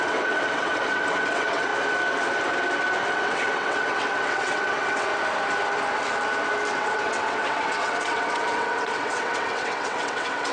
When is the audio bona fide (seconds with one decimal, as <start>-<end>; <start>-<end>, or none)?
1.7-3.1; 5.1-6.7

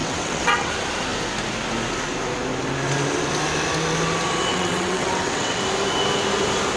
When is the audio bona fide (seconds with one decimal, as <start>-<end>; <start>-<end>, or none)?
0.7-4.5; 5.6-6.8